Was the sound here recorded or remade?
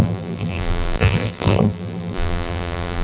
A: remade